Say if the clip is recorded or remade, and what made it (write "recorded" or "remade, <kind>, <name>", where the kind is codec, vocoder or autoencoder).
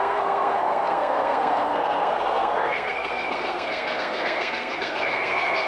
remade, codec, SNAC